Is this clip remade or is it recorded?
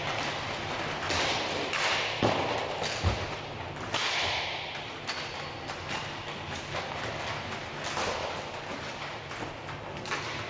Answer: recorded